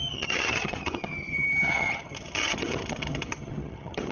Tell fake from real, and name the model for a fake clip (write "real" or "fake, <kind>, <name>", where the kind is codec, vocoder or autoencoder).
fake, vocoder, HiFi-GAN